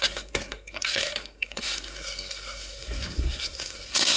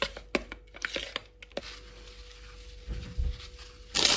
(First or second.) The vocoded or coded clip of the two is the first